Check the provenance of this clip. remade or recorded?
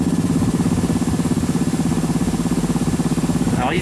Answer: recorded